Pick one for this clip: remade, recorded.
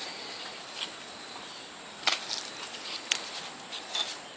recorded